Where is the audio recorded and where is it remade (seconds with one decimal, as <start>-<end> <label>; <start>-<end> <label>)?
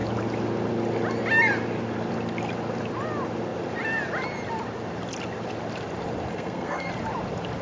0.0-6.3 recorded; 6.3-6.9 remade; 6.9-7.6 recorded